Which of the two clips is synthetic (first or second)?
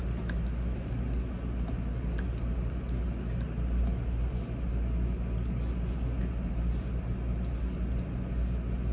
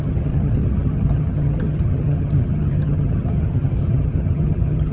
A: second